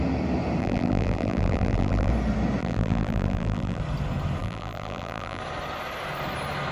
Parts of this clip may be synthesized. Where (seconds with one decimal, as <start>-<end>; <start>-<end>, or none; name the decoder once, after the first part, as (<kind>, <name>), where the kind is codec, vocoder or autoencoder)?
0.6-2.1 (vocoder, BigVGAN v2); 2.6-3.8; 4.4-5.4